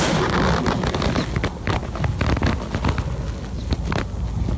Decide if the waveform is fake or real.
real